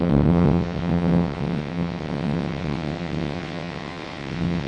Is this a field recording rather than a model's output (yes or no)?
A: no